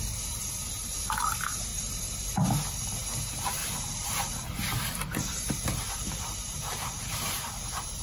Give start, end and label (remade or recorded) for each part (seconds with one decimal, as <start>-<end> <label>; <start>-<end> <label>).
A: 0.0-1.7 recorded; 1.7-2.2 remade; 2.2-3.6 recorded; 3.6-8.0 remade